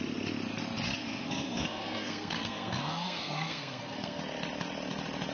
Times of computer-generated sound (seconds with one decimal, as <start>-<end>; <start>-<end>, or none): 1.0-4.2